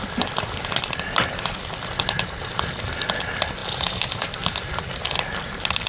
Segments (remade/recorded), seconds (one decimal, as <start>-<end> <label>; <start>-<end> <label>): 0.0-5.9 recorded